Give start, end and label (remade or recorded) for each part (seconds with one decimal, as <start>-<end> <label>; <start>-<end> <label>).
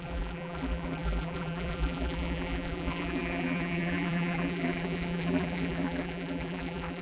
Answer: 0.0-7.0 remade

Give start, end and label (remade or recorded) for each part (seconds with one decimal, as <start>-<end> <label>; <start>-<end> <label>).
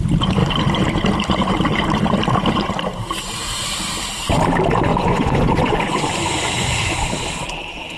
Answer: 0.0-4.9 recorded; 4.9-7.1 remade; 7.1-8.0 recorded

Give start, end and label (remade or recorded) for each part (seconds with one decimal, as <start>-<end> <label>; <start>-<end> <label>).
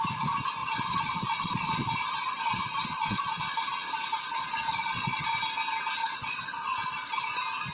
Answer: 0.0-0.6 recorded; 0.6-5.2 remade; 5.2-6.0 recorded; 6.0-7.2 remade; 7.2-7.7 recorded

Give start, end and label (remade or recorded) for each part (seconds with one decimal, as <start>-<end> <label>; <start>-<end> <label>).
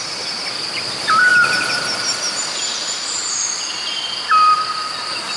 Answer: 0.0-5.4 recorded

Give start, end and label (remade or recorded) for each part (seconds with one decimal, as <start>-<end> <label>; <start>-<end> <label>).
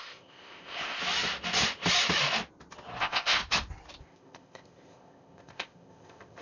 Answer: 0.0-1.0 remade; 1.0-3.0 recorded; 3.0-3.4 remade; 3.4-4.0 recorded; 4.0-6.4 remade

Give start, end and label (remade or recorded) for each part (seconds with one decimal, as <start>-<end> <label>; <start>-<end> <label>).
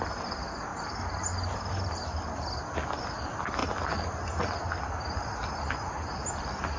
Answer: 0.0-0.7 recorded; 0.7-2.2 remade; 2.2-6.8 recorded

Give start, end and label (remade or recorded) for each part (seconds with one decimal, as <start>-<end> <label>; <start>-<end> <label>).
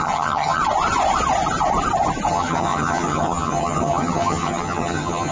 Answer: 0.0-0.6 remade; 0.6-2.3 recorded; 2.3-5.3 remade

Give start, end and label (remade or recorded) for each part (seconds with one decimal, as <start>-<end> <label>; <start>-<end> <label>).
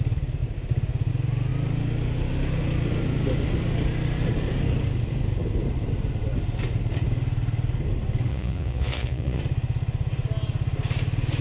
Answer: 0.0-8.3 recorded; 8.3-9.4 remade; 9.4-11.4 recorded